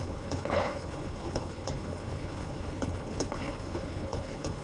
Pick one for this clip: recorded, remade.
remade